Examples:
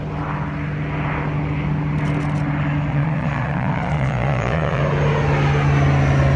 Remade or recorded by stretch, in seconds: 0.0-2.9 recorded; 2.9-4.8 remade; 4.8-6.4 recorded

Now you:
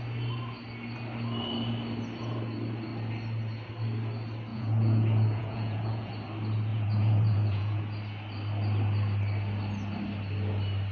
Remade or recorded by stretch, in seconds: 0.0-4.5 recorded; 4.5-6.1 remade; 6.1-6.7 recorded; 6.7-7.8 remade; 7.8-10.9 recorded

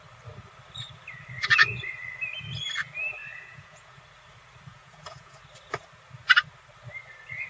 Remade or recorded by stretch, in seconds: 0.0-3.2 recorded; 3.2-4.0 remade; 4.0-4.7 recorded; 4.7-5.4 remade; 5.4-7.5 recorded

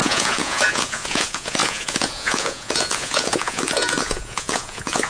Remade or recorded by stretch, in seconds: 0.0-5.1 remade

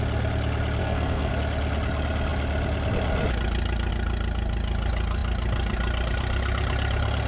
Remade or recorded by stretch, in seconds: 0.0-0.8 recorded; 0.8-1.3 remade; 1.3-7.3 recorded

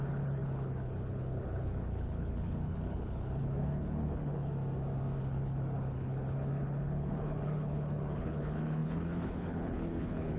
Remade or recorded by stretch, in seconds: 0.0-4.5 remade; 4.5-5.2 recorded; 5.2-10.4 remade

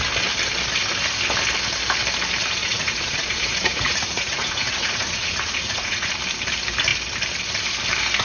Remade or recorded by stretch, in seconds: 0.0-2.6 recorded; 2.6-6.1 remade; 6.1-8.2 recorded

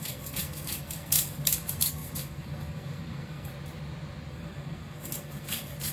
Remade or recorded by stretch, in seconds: 0.0-3.5 remade; 3.5-4.3 recorded; 4.3-5.9 remade